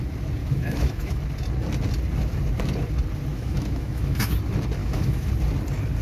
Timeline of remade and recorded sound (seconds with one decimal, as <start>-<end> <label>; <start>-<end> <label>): 0.0-0.4 recorded; 0.4-1.2 remade; 1.2-3.3 recorded; 3.3-4.3 remade; 4.3-4.8 recorded; 4.8-5.3 remade; 5.3-6.0 recorded